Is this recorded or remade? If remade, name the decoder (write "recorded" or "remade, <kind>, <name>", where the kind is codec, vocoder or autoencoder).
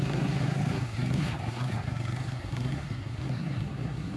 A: remade, codec, SNAC